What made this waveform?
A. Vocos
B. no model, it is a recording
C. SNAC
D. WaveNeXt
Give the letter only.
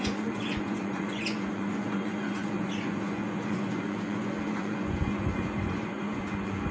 A